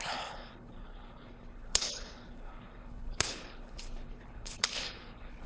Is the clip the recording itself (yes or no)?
no